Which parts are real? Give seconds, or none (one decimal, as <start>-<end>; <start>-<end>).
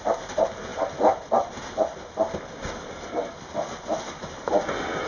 0.0-5.1